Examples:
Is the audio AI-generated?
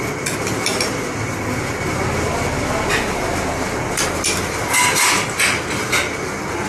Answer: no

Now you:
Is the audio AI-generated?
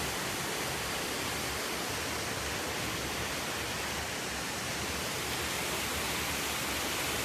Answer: no